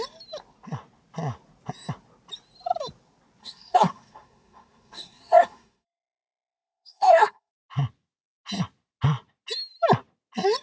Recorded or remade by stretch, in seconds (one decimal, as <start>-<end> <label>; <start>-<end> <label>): 0.0-3.4 recorded; 3.4-7.5 remade; 7.5-10.6 recorded